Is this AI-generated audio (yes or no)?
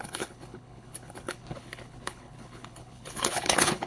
yes